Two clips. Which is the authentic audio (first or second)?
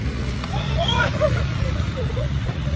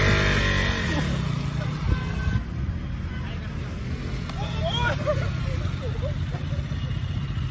second